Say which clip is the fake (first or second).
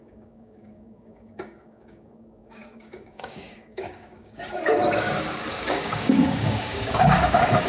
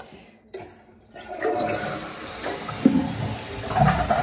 first